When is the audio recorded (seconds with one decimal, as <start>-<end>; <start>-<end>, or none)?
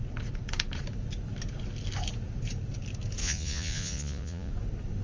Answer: 0.0-3.2; 4.5-5.0